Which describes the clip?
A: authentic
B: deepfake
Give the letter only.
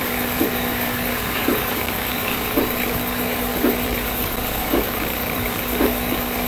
B